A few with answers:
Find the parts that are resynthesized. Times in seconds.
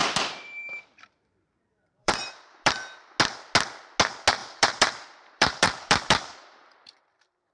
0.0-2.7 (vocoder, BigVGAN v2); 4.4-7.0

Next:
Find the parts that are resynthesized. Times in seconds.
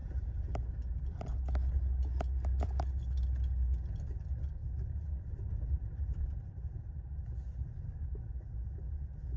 0.0-0.7 (vocoder, BigVGAN v2); 4.6-7.2